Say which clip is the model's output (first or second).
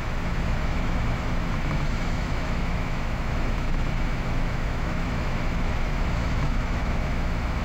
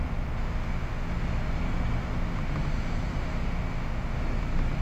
first